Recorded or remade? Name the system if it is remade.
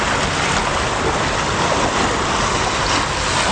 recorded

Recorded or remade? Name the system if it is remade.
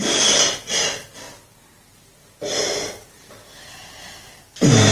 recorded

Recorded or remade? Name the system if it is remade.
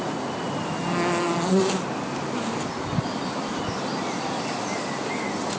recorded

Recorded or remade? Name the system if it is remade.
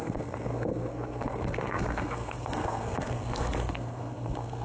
remade, codec, SNAC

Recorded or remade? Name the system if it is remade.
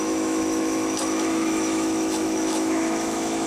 remade, autoencoder, DAC-VAE